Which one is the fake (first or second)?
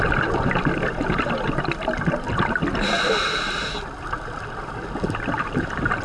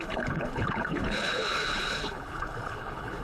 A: second